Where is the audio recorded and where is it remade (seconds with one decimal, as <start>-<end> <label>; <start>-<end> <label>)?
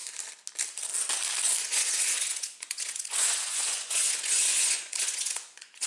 0.0-1.6 recorded; 1.6-5.9 remade